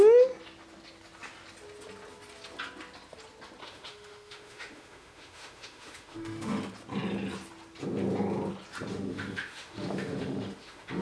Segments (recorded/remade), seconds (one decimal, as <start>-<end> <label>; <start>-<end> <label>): 0.0-3.6 recorded; 3.6-6.6 remade; 6.6-8.9 recorded; 8.9-11.0 remade